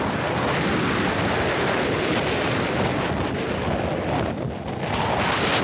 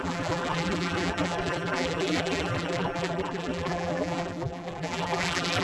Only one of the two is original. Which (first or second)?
first